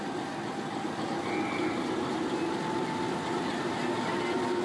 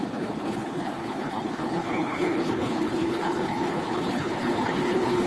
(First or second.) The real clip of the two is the first